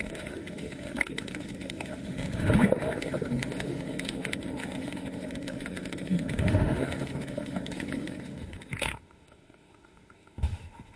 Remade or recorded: remade